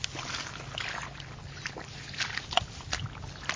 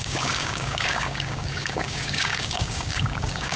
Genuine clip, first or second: first